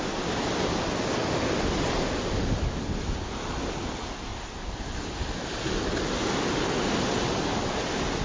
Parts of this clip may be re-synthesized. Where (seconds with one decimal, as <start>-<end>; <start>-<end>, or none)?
none